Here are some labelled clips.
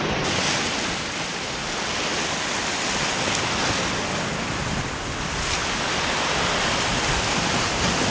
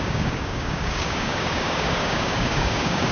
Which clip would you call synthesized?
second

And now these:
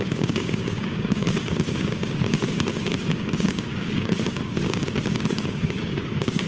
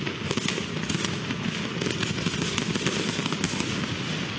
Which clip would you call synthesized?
first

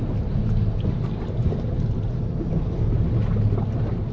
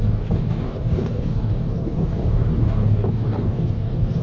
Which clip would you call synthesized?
second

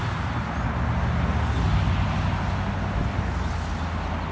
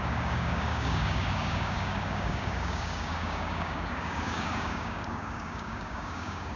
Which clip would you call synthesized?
second